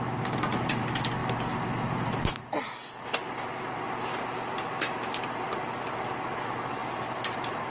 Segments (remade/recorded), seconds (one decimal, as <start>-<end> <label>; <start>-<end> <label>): 0.0-1.2 remade; 1.2-5.8 recorded; 5.8-7.7 remade